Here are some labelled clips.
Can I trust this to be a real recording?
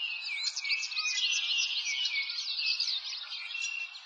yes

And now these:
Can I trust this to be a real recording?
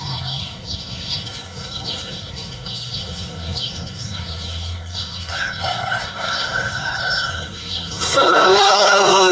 no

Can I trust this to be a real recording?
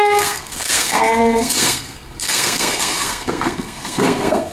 no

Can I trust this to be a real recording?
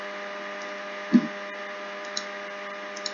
yes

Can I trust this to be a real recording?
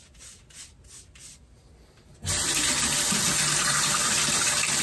yes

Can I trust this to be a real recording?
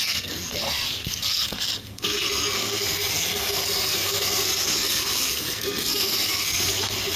no